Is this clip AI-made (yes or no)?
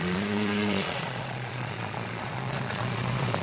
yes